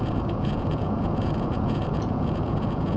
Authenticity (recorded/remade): remade